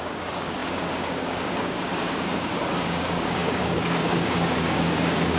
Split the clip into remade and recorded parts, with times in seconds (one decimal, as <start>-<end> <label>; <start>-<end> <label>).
0.0-5.4 remade